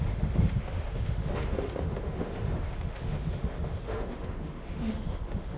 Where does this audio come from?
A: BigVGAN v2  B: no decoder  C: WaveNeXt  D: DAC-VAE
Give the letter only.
D